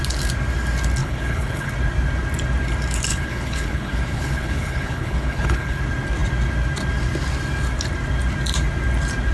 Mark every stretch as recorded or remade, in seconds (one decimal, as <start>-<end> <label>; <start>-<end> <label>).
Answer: 0.0-1.0 recorded; 1.0-1.7 remade; 1.7-3.1 recorded; 3.1-5.8 remade; 5.8-9.3 recorded